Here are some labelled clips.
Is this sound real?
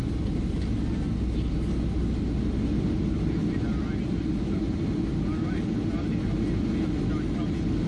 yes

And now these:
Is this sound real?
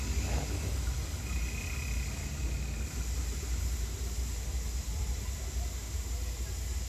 yes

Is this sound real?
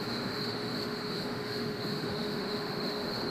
no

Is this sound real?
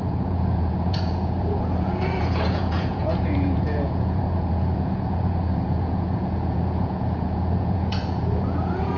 no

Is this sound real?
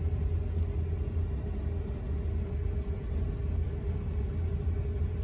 yes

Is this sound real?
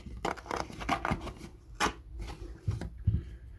yes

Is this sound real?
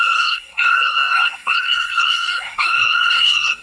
no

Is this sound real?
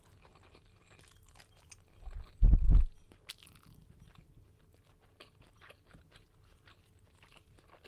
yes